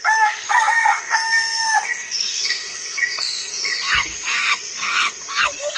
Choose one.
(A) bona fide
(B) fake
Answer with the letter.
B